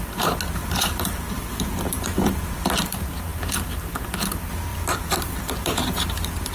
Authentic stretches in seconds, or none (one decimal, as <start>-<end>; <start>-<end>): 0.0-0.6; 2.4-4.7; 5.5-6.5